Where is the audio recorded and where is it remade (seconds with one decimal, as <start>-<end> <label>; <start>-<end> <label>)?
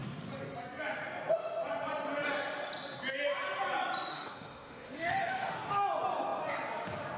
0.0-4.1 recorded; 4.1-5.5 remade; 5.5-7.2 recorded